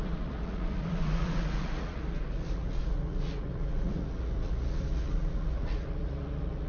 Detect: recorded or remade remade